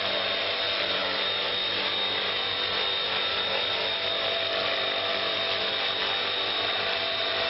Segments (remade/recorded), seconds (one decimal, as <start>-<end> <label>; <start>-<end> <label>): 0.0-7.5 recorded